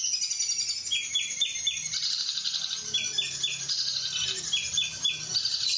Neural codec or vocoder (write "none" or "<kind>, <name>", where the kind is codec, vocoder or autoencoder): none